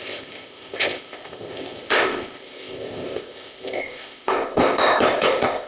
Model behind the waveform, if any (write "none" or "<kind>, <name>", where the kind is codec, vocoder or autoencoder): codec, ZipCodec